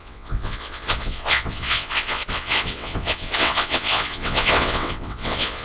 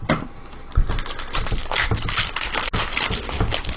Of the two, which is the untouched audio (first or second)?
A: second